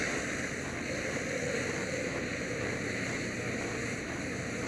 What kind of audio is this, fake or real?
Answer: real